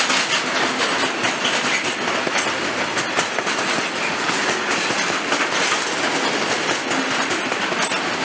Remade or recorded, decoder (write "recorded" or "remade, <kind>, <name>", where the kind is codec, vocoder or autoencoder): recorded